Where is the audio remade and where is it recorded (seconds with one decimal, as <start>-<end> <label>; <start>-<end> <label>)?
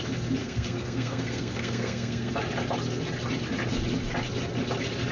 0.0-0.4 recorded; 0.4-2.3 remade; 2.3-5.1 recorded